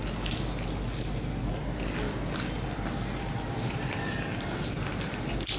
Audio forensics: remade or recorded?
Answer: recorded